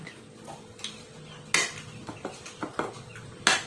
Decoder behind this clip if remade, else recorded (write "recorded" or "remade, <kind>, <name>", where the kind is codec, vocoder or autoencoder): recorded